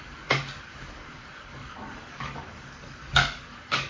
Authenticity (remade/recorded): remade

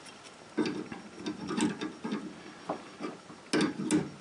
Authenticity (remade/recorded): recorded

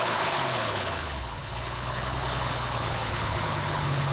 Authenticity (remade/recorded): remade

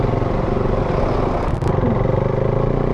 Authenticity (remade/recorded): recorded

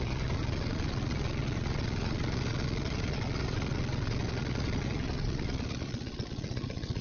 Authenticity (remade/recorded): remade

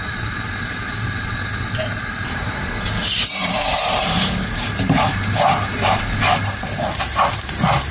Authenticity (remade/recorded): remade